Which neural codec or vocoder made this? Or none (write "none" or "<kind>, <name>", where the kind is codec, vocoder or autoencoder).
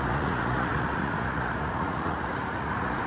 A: vocoder, Vocos